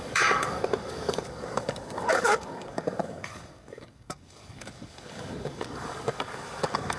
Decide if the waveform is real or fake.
fake